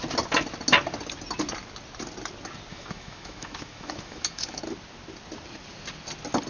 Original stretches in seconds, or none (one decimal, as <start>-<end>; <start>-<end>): 0.0-2.7; 4.6-6.5